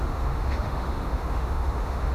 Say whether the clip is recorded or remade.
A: remade